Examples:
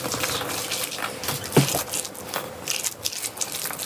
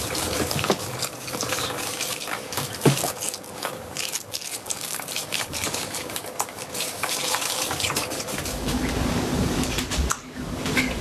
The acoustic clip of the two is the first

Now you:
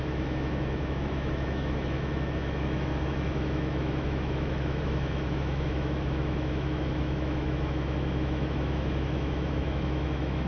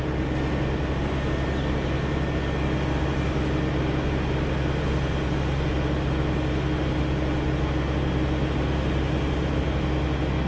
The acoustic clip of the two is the second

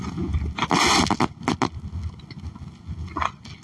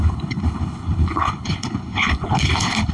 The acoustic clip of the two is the first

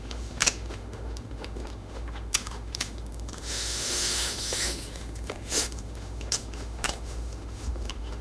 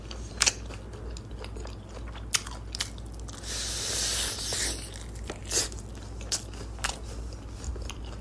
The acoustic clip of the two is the second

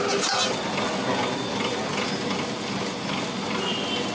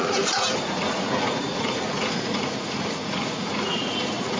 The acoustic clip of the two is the first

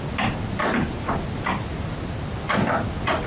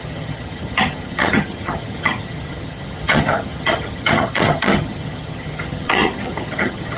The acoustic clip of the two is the first